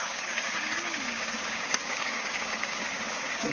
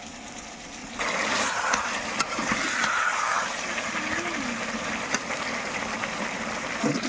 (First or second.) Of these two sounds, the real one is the second